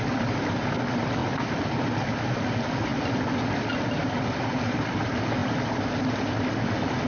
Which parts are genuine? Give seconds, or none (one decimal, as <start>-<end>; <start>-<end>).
0.0-7.1